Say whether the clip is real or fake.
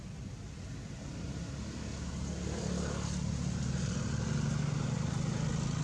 real